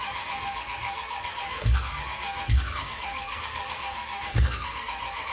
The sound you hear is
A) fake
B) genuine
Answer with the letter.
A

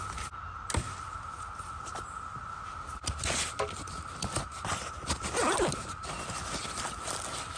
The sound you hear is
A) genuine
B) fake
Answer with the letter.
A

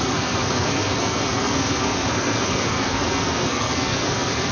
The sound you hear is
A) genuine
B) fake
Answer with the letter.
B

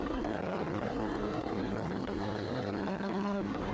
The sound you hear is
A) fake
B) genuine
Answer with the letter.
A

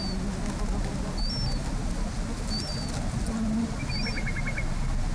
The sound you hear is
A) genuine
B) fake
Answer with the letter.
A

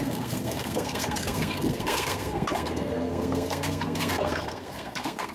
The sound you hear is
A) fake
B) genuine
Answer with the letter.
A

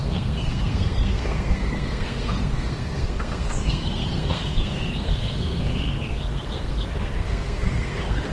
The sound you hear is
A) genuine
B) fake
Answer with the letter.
B